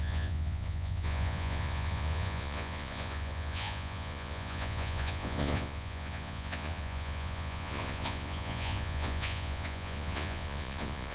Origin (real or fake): fake